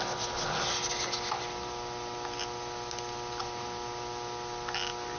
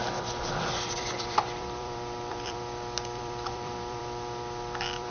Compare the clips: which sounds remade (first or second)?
second